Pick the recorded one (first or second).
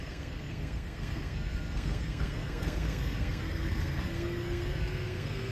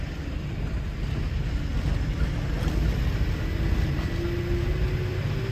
second